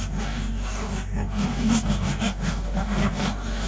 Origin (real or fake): fake